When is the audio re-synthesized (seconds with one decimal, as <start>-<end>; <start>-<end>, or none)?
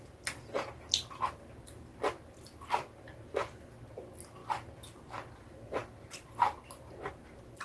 none